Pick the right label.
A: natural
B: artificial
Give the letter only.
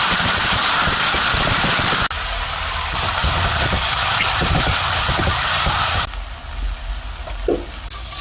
A